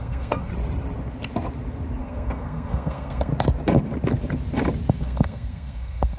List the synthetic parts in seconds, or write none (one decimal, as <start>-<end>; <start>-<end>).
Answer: 0.0-0.5; 2.0-3.3; 4.9-6.2